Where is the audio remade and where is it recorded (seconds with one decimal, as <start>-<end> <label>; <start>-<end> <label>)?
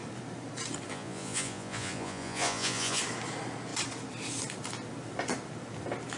0.0-0.9 recorded; 0.9-3.0 remade; 3.0-6.2 recorded